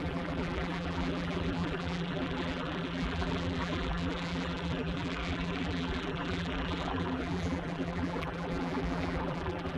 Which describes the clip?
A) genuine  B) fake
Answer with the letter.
B